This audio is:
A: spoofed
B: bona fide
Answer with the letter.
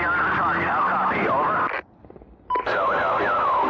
B